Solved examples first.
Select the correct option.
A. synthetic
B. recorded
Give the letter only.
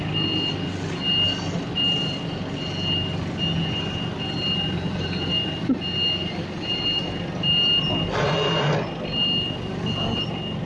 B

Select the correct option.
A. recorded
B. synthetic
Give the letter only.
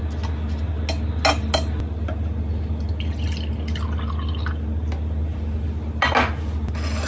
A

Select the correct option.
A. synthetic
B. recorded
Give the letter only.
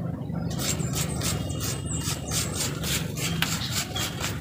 B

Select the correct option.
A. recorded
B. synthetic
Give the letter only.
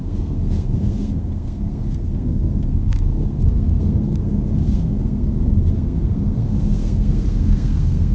B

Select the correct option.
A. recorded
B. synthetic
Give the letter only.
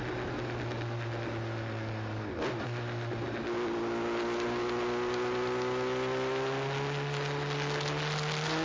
A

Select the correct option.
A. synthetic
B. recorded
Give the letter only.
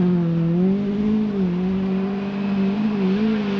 B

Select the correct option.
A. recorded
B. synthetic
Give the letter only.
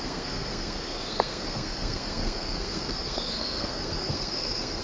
B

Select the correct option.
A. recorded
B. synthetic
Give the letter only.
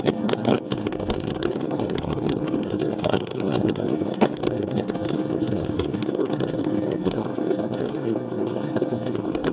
B